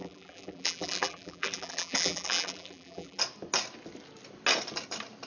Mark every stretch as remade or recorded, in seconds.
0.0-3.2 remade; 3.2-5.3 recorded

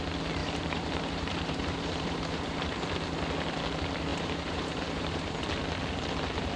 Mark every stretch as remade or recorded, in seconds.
0.0-0.4 recorded; 0.4-2.8 remade; 2.8-4.1 recorded; 4.1-5.3 remade; 5.3-6.6 recorded

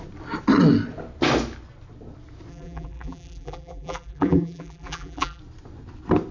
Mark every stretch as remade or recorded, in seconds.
0.0-2.5 recorded; 2.5-5.4 remade; 5.4-6.3 recorded

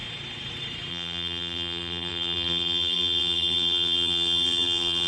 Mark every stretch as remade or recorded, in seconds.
0.0-0.9 recorded; 0.9-5.1 remade